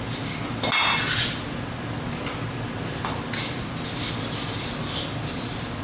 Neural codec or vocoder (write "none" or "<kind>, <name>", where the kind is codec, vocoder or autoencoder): none